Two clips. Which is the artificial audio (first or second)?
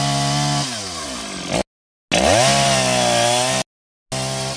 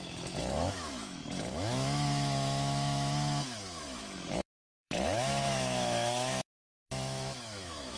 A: second